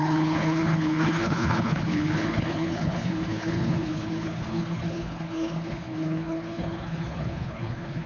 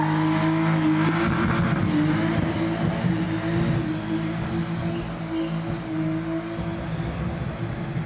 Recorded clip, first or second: second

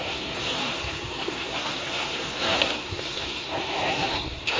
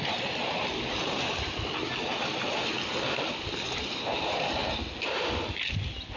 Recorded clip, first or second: second